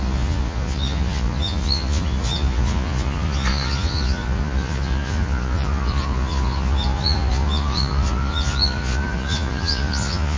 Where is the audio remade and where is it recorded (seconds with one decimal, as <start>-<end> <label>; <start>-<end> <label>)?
0.0-10.4 remade